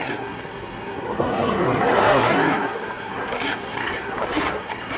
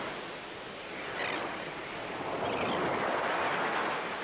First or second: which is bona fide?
second